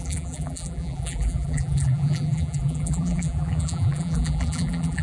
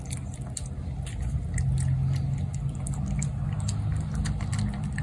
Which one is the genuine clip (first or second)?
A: second